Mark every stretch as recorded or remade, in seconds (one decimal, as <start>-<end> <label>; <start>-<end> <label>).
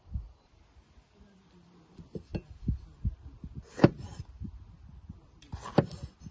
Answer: 0.0-6.3 recorded